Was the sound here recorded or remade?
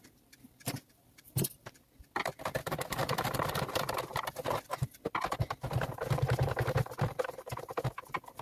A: remade